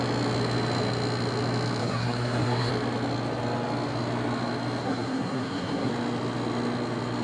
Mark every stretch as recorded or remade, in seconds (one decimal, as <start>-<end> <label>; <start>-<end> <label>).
0.0-1.8 recorded; 1.8-2.7 remade; 2.7-4.8 recorded; 4.8-5.9 remade; 5.9-7.2 recorded